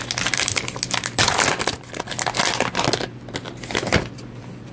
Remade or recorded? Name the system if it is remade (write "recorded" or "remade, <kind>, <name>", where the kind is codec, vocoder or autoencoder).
recorded